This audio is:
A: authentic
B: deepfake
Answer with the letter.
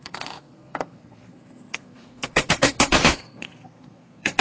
B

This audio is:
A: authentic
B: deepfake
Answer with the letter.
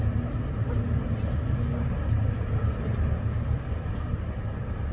A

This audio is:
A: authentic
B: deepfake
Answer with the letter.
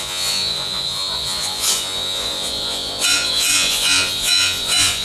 B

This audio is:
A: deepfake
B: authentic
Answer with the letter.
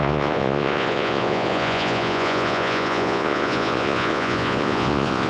A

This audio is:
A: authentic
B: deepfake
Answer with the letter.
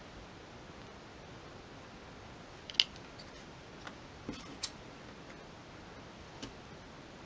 A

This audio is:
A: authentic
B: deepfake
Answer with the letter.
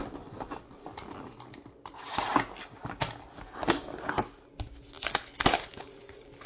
A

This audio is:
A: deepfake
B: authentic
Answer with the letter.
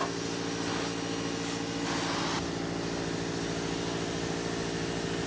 B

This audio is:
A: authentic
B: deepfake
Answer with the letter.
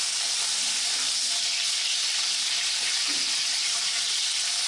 A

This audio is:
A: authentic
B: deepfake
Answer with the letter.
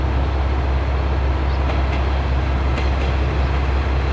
A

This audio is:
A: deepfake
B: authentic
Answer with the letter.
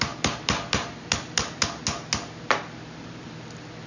B